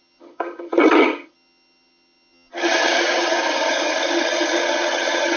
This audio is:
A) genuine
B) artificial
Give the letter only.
B